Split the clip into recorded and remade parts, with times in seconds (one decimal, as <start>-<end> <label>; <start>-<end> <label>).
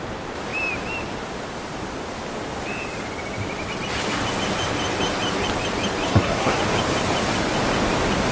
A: 0.0-6.1 recorded; 6.1-6.6 remade; 6.6-8.3 recorded